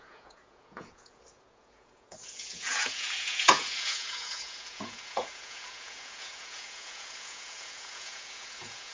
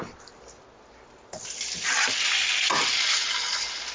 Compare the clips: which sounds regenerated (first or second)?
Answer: first